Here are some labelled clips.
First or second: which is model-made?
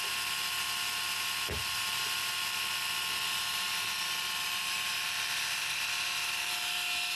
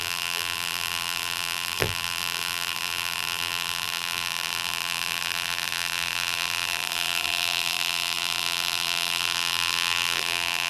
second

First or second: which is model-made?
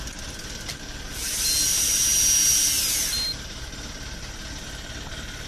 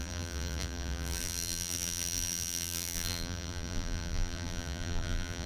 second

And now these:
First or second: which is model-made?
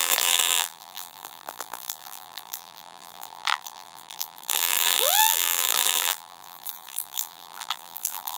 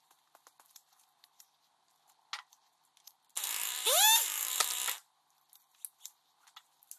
first